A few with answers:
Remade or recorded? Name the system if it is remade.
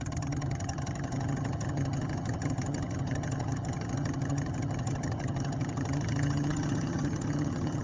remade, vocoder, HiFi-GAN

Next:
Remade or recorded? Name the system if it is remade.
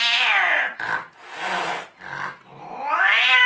recorded